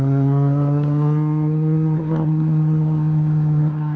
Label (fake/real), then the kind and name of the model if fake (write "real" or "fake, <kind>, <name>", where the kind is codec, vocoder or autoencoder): fake, codec, SNAC